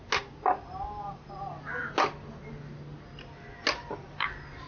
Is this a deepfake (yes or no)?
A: no